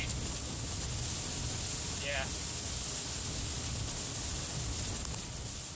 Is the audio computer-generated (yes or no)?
no